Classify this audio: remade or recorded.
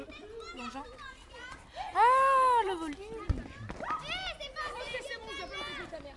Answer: recorded